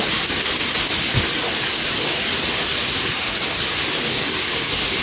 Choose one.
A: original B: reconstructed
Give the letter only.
A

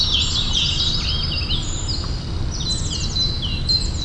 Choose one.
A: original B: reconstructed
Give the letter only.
A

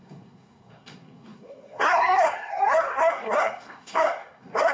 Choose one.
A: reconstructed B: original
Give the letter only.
A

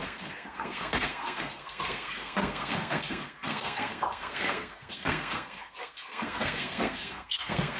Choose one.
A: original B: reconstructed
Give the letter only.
B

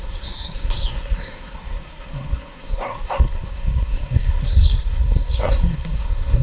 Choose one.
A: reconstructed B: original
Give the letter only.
A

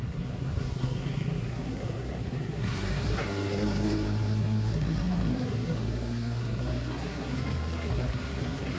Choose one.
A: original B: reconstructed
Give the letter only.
B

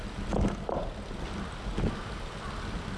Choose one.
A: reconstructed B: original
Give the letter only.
B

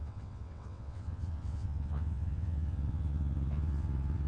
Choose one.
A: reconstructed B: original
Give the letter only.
A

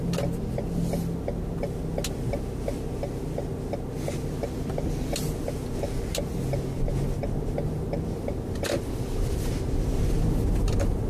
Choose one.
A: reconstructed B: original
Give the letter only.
B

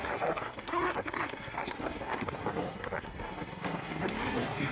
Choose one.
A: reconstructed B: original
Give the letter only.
A